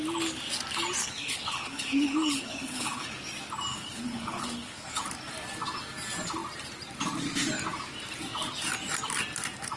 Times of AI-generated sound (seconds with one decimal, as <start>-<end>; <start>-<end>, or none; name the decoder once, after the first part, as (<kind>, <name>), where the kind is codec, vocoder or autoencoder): 1.0-3.1 (codec, HILCodec); 3.7-5.0